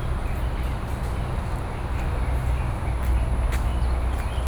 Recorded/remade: recorded